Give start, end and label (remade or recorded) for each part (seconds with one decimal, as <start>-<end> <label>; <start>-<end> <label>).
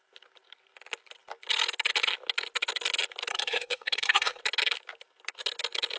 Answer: 0.0-3.3 recorded; 3.3-4.4 remade; 4.4-6.0 recorded